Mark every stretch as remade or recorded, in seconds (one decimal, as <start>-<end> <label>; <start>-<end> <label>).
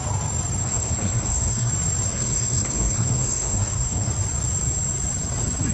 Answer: 0.0-0.6 recorded; 0.6-1.7 remade; 1.7-2.1 recorded; 2.1-4.1 remade; 4.1-5.7 recorded